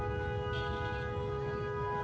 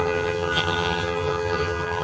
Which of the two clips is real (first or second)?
first